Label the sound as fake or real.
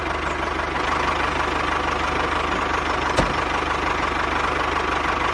real